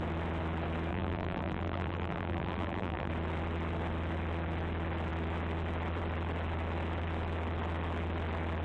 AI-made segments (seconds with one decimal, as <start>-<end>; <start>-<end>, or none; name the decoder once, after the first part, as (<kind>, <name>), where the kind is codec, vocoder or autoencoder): 0.9-3.1 (vocoder, BigVGAN v2)